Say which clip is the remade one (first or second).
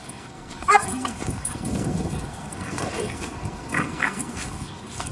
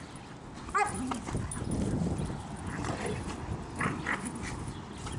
first